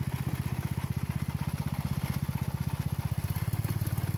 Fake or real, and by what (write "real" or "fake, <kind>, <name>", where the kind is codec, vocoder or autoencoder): real